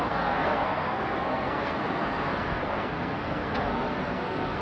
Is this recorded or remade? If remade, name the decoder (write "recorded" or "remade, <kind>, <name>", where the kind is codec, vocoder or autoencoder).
remade, codec, SNAC